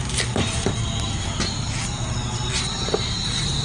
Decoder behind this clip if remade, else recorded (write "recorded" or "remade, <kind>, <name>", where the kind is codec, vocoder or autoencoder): remade, vocoder, BigVGAN v2